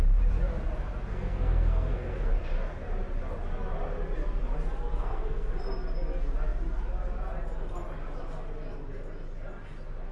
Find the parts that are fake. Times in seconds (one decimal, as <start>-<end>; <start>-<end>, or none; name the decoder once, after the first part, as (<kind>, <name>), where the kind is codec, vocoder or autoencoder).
1.1-2.3 (codec, SNAC); 4.9-5.6